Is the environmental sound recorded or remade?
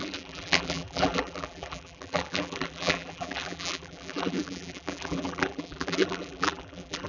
remade